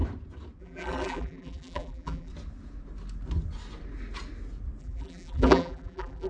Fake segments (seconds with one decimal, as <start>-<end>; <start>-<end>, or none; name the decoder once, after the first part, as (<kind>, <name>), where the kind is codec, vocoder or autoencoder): 0.6-2.3 (vocoder, BigVGAN v2); 4.8-6.3